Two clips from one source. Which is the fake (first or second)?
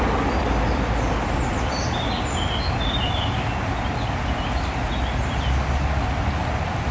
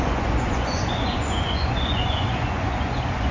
second